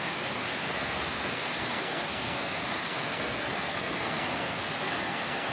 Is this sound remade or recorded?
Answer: remade